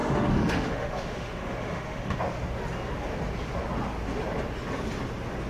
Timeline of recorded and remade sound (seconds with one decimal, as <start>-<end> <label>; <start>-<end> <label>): 0.0-2.2 remade; 2.2-5.5 recorded